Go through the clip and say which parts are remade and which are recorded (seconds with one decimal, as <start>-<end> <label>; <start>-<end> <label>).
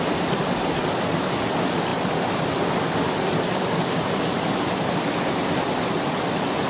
0.0-6.7 recorded